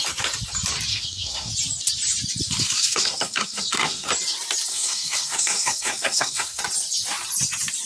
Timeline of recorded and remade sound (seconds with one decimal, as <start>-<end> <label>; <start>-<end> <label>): 0.0-0.9 recorded; 0.9-1.5 remade; 1.5-2.6 recorded; 2.6-4.1 remade; 4.1-4.7 recorded; 4.7-6.6 remade; 6.6-7.9 recorded